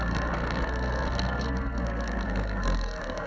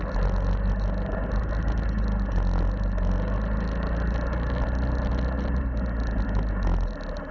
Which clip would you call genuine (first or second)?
second